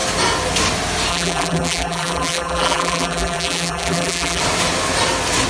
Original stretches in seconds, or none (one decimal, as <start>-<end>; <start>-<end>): 0.0-1.1; 4.4-5.5